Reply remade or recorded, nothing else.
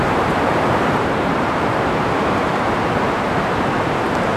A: remade